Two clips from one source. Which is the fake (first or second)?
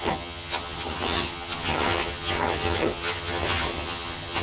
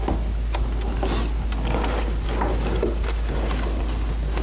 first